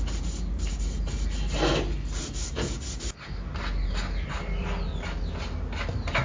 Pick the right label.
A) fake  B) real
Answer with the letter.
B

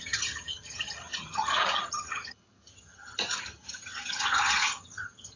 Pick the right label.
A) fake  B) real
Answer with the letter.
A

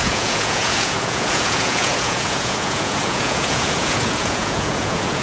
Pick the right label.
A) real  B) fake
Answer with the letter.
B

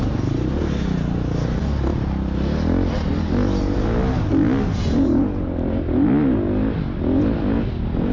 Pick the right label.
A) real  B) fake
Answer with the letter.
A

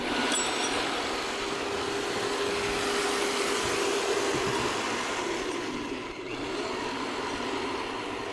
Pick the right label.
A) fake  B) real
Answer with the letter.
B